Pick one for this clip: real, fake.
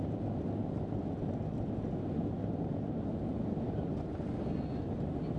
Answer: real